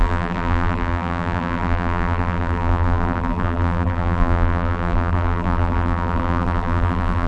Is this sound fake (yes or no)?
yes